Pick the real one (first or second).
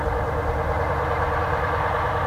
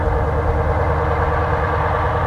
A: second